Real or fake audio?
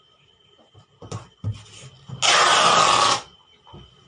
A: real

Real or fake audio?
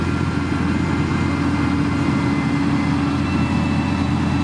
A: real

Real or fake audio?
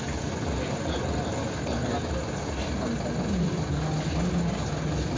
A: real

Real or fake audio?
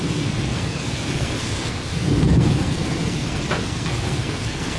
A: fake